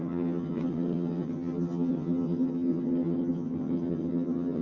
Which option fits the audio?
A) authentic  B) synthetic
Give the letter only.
B